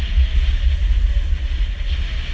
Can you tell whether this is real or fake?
real